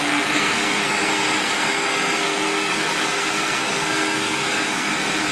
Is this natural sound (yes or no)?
no